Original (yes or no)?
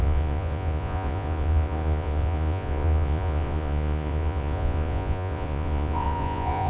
no